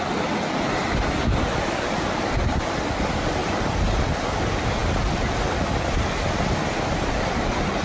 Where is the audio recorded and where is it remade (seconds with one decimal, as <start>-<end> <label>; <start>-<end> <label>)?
0.0-7.8 recorded